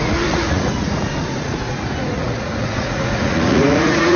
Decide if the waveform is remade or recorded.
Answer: remade